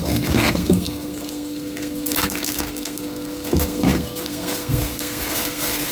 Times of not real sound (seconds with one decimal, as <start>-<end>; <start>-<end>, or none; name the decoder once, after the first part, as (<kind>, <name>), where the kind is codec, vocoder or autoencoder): 0.0-5.9 (codec, SNAC)